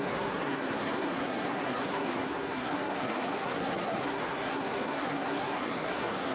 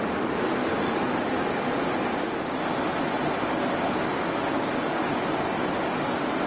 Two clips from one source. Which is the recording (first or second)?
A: second